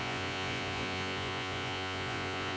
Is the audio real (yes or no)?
no